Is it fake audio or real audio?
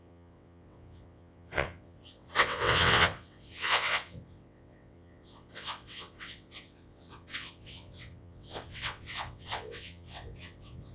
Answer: fake